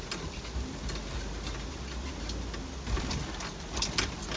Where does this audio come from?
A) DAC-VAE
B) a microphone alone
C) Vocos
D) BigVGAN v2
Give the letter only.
B